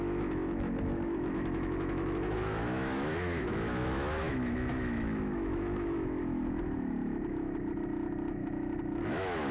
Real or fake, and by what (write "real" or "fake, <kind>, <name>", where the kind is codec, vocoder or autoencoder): fake, autoencoder, DAC-VAE